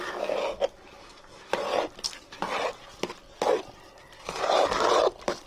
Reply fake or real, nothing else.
real